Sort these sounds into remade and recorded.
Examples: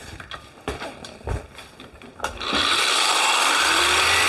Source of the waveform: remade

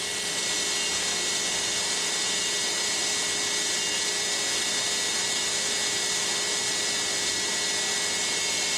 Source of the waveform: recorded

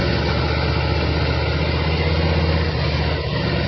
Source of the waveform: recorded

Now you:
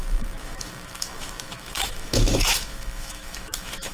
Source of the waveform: remade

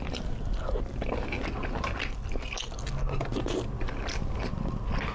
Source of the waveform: recorded